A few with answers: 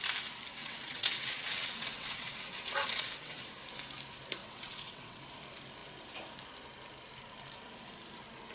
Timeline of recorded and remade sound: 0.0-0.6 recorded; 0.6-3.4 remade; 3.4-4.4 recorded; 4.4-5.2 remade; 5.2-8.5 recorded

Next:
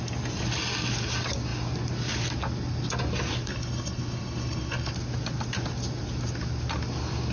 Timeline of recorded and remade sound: 0.0-3.5 recorded; 3.5-4.9 remade; 4.9-7.3 recorded